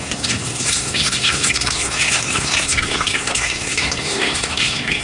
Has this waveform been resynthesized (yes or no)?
yes